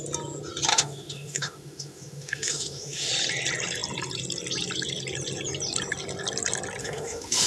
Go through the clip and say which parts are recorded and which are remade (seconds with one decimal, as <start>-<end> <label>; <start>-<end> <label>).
0.0-0.7 recorded; 0.7-3.1 remade; 3.1-6.8 recorded; 6.8-7.5 remade